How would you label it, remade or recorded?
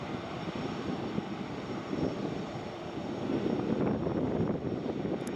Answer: recorded